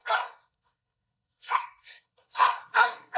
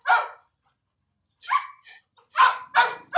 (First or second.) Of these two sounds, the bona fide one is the second